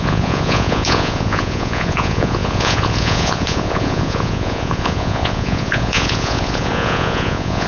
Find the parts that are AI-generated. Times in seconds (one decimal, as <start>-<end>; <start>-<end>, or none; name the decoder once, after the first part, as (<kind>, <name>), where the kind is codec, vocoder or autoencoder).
0.0-7.7 (vocoder, Vocos)